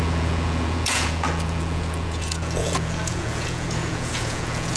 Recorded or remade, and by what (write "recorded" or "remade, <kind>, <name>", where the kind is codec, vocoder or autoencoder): remade, vocoder, Vocos